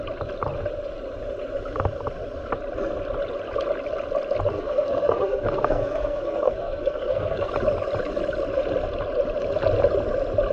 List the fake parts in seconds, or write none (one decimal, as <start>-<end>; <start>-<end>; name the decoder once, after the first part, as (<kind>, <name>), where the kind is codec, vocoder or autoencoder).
4.5-7.5 (codec, SNAC)